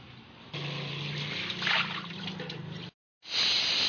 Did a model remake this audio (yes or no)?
no